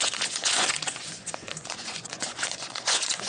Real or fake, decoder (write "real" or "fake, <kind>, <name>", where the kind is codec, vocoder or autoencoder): fake, vocoder, Vocos